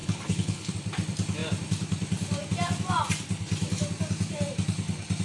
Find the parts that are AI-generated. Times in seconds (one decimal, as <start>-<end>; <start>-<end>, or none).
0.0-0.7